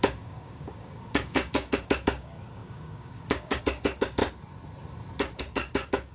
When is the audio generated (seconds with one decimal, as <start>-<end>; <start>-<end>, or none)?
0.0-4.2; 5.4-6.1